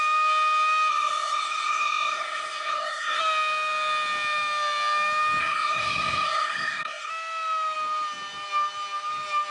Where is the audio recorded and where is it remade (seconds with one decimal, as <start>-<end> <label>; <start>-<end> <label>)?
0.0-0.9 recorded; 0.9-3.2 remade; 3.2-5.4 recorded; 5.4-7.1 remade; 7.1-9.5 recorded